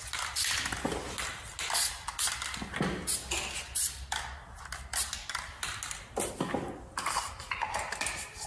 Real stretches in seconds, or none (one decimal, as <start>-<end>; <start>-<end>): 0.0-8.5

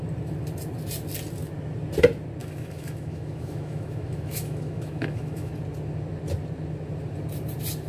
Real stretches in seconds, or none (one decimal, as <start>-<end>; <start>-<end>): 0.0-2.4; 5.5-7.9

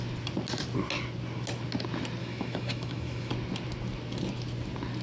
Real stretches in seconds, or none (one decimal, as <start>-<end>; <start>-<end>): 0.0-2.2; 3.3-5.0

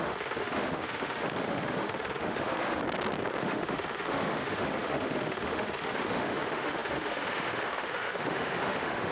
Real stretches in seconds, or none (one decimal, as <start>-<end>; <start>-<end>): 2.8-3.4

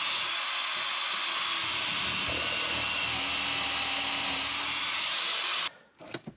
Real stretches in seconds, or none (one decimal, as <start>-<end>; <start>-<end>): 0.0-6.4